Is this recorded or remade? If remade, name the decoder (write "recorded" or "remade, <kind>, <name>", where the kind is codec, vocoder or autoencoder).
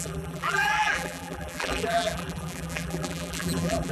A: remade, vocoder, BigVGAN v2